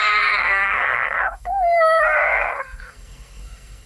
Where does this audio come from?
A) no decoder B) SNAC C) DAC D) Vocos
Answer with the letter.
B